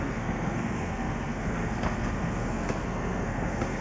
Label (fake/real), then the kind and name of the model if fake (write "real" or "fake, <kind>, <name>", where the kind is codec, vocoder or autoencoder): fake, codec, SNAC